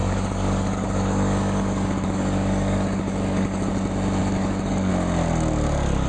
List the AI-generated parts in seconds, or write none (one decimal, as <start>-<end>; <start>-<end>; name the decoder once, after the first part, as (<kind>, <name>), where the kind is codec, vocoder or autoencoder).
0.0-3.7 (codec, DAC); 4.2-4.9